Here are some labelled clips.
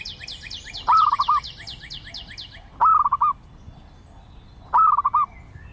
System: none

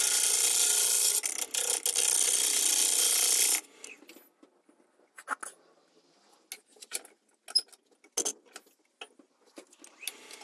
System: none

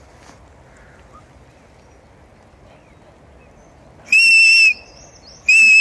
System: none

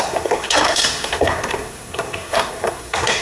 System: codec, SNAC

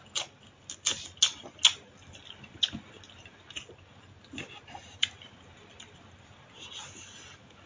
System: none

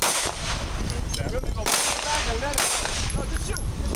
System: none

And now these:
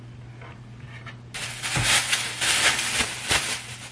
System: none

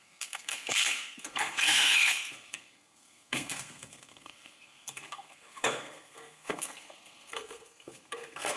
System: codec, SNAC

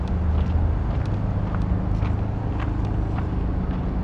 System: none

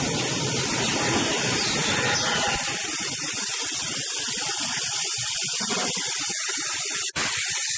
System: none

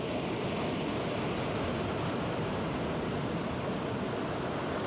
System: none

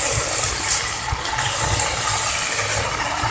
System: none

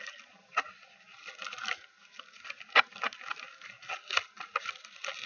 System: none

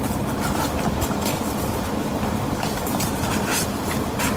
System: none